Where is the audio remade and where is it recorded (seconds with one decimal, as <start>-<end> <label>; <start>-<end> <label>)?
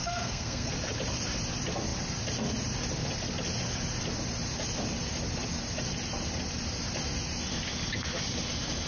0.0-0.7 remade; 0.7-8.9 recorded